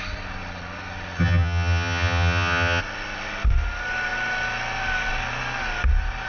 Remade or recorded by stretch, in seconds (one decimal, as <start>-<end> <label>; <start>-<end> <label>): 0.0-1.2 recorded; 1.2-2.8 remade; 2.8-6.3 recorded